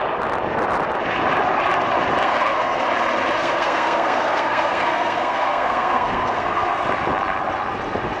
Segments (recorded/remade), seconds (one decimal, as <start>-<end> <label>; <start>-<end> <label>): 0.0-2.2 recorded; 2.2-2.8 remade; 2.8-3.4 recorded; 3.4-6.8 remade; 6.8-8.2 recorded